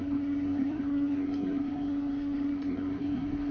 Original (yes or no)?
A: no